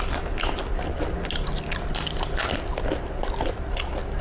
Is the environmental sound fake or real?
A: real